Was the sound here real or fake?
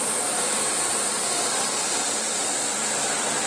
fake